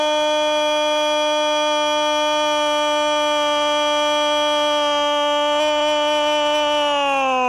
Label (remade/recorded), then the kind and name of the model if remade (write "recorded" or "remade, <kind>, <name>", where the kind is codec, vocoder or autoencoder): recorded